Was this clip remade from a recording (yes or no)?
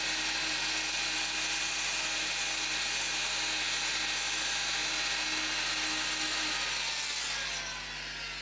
no